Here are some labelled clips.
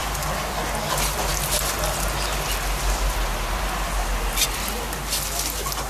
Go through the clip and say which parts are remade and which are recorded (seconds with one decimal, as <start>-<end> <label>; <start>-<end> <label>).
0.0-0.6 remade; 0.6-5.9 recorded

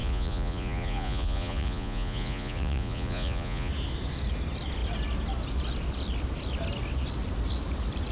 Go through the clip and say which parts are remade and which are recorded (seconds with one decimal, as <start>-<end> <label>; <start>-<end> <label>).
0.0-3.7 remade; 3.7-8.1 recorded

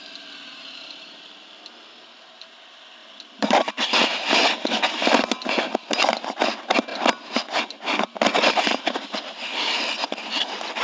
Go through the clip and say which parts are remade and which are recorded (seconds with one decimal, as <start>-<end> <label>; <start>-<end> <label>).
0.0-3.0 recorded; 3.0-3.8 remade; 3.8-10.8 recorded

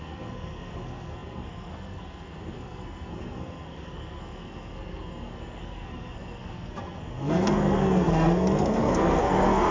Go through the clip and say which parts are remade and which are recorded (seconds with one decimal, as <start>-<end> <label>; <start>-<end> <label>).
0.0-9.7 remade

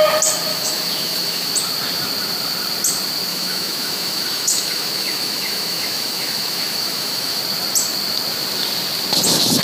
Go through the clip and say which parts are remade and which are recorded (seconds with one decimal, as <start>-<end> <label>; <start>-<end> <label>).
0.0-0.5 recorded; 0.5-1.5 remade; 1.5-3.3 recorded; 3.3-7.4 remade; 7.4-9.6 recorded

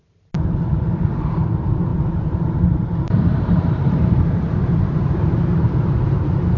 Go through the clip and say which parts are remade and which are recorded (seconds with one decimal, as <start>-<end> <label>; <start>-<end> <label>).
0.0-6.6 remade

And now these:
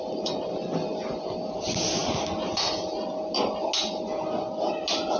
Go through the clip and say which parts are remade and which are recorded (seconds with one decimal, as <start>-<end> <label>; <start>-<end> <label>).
0.0-5.2 recorded

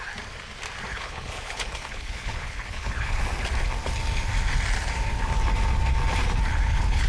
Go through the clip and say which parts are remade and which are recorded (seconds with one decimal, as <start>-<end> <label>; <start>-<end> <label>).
0.0-0.9 recorded; 0.9-3.2 remade; 3.2-6.5 recorded; 6.5-7.1 remade